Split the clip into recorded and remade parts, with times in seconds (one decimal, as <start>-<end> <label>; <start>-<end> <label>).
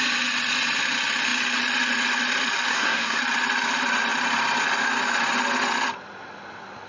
0.0-2.7 recorded; 2.7-3.2 remade; 3.2-6.9 recorded